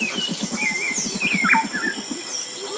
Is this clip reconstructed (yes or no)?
no